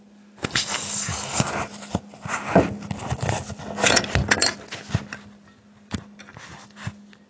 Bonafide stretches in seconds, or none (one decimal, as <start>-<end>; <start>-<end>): 0.0-0.4; 1.4-7.3